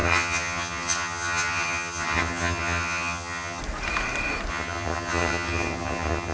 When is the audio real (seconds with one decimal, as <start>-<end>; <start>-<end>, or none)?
3.6-4.5